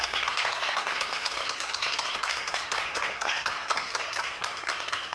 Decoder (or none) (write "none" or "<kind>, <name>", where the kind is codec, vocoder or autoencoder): codec, SNAC